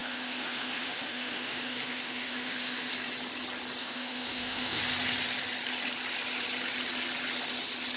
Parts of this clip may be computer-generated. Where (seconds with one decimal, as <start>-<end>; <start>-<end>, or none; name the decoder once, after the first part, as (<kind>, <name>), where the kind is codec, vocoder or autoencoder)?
0.0-2.9 (autoencoder, DAC-VAE); 3.8-4.8

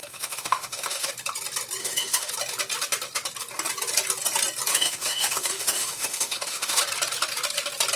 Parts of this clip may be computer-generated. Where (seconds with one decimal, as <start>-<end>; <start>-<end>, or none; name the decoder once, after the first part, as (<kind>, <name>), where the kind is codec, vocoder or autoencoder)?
0.0-1.1 (autoencoder, DAC-VAE); 1.8-2.3; 4.7-6.8

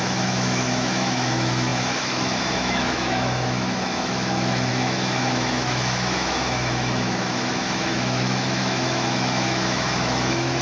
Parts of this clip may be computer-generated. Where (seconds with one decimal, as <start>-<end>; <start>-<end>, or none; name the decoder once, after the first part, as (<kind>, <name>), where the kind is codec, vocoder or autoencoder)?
0.0-10.6 (autoencoder, DAC-VAE)

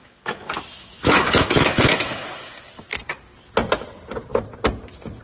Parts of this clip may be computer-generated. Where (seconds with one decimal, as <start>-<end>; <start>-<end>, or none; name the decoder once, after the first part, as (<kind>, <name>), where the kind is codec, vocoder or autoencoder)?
0.0-2.7 (autoencoder, DAC-VAE)

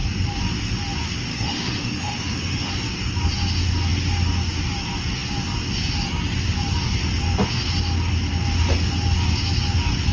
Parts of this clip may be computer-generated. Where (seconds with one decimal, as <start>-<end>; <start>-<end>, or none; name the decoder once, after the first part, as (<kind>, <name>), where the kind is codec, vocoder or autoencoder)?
1.3-2.7 (autoencoder, DAC-VAE)

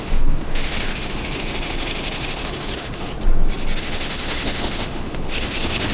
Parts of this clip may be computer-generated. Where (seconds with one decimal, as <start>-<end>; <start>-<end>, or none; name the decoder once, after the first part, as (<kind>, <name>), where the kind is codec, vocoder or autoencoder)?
0.0-3.1 (autoencoder, DAC-VAE); 3.8-5.9

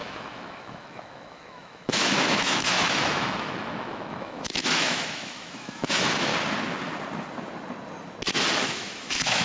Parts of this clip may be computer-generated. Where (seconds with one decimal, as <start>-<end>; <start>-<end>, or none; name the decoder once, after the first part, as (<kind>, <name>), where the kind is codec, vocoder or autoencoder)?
0.0-6.3 (autoencoder, DAC-VAE); 8.7-9.4

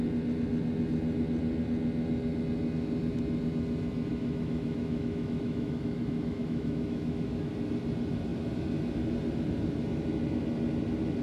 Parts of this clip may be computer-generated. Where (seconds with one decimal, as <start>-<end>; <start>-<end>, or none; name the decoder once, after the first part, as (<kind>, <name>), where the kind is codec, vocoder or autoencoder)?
4.1-7.5 (autoencoder, DAC-VAE)